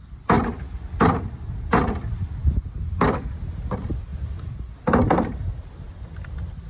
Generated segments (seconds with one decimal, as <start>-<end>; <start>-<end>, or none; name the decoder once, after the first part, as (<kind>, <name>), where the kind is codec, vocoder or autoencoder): 4.1-6.3 (vocoder, BigVGAN v2)